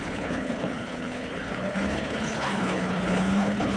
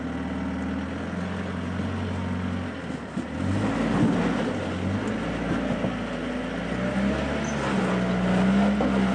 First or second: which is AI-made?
first